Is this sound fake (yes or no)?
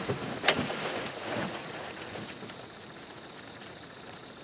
yes